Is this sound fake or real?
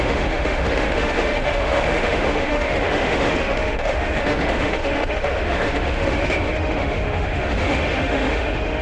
fake